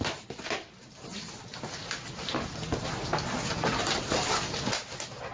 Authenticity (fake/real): real